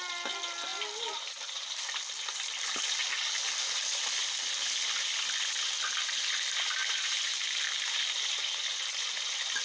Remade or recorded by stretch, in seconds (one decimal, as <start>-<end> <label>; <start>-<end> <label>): 0.0-6.8 recorded; 6.8-8.6 remade; 8.6-9.6 recorded